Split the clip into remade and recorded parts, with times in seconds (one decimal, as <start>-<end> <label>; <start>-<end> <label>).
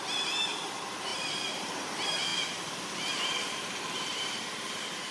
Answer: 0.0-2.3 remade; 2.3-3.8 recorded; 3.8-5.1 remade